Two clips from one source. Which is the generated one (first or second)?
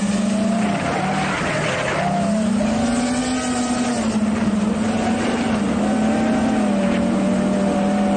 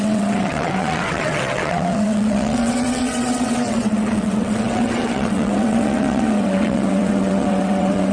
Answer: second